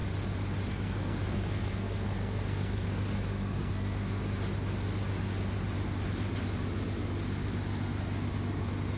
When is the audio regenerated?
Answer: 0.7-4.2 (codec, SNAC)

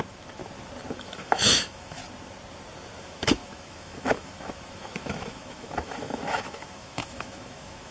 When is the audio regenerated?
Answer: 0.0-0.4 (autoencoder, DAC-VAE); 1.0-2.0; 3.0-7.9

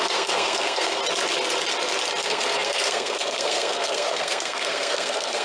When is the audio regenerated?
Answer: 0.0-1.0 (codec, SNAC); 2.2-5.4

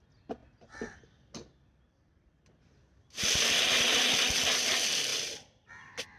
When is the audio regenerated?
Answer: none

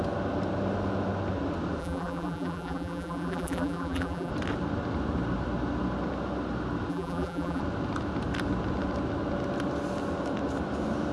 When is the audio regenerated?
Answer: 1.8-4.3 (vocoder, BigVGAN v2); 6.9-7.6

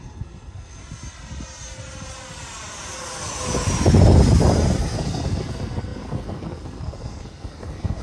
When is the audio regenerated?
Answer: 0.0-0.8 (codec, SNAC); 4.8-8.0

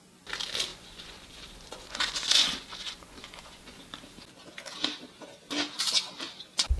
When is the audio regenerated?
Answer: 0.7-3.8 (vocoder, Vocos)

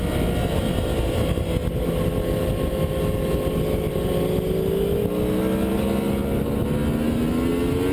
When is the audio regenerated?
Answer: none